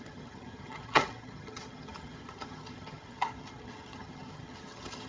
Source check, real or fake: fake